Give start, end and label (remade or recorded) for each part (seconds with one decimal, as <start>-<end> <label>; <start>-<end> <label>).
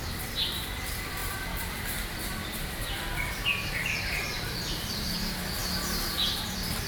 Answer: 0.0-6.9 remade